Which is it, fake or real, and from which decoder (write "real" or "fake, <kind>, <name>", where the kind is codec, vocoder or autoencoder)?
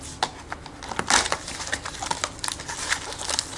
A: real